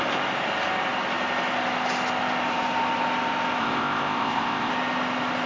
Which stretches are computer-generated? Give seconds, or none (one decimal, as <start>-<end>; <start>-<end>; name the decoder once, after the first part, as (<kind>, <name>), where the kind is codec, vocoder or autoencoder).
3.6-4.7 (codec, ZipCodec)